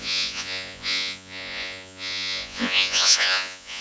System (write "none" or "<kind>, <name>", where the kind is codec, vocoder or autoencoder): vocoder, Vocos